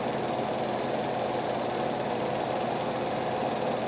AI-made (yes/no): no